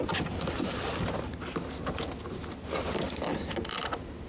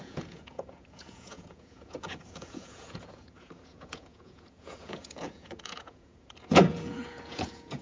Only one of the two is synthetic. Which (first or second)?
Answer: second